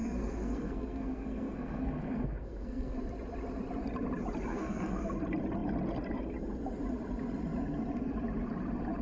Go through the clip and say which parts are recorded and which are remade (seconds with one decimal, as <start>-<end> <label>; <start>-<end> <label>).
0.0-3.0 remade; 3.0-4.5 recorded; 4.5-5.0 remade; 5.0-9.0 recorded